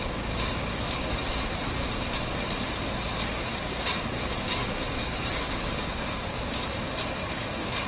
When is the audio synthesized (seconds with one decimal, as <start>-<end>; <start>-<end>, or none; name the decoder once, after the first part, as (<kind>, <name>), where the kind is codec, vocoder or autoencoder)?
0.0-1.2 (codec, DAC); 3.2-7.9